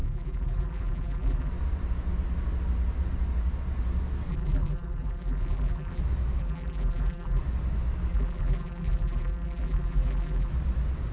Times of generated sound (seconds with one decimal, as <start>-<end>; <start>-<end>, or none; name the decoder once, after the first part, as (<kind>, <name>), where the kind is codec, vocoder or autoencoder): 0.0-1.5 (vocoder, BigVGAN v2); 4.3-6.0; 6.4-7.4; 8.1-10.5